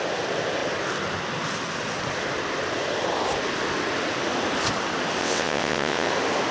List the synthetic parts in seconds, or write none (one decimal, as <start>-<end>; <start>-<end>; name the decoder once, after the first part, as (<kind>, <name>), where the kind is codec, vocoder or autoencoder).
5.2-6.1 (vocoder, WaveNeXt)